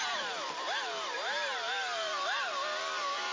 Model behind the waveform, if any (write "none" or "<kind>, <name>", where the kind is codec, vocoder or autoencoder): vocoder, BigVGAN v2